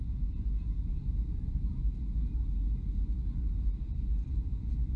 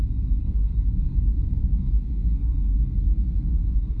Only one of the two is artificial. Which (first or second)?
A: second